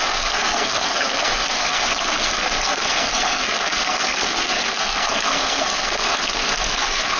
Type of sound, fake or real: fake